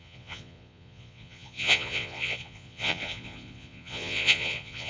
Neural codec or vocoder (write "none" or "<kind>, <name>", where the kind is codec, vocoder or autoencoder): vocoder, Vocos